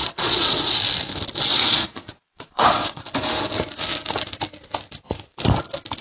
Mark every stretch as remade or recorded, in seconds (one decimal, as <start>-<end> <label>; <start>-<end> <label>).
0.0-0.8 remade; 0.8-1.5 recorded; 1.5-3.0 remade; 3.0-6.0 recorded